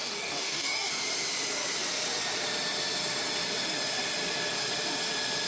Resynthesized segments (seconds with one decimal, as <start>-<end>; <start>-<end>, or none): 0.0-0.9